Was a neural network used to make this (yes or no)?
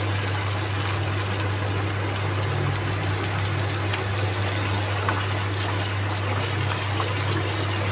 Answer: no